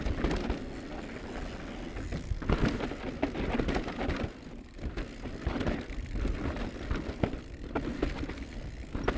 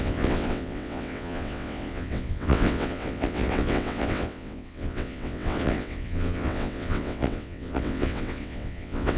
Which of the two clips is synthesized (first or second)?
second